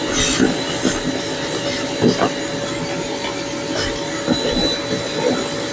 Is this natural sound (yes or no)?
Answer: yes